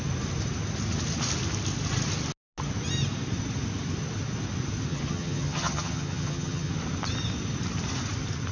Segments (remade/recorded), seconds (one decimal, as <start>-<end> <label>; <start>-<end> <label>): 0.0-4.9 recorded; 4.9-6.7 remade; 6.7-8.5 recorded